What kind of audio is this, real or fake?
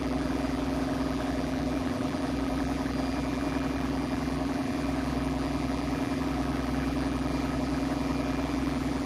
fake